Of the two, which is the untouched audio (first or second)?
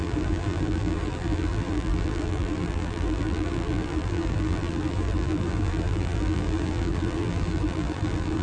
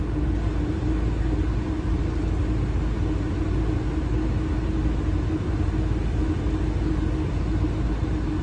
second